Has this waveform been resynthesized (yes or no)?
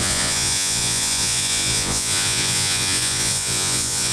yes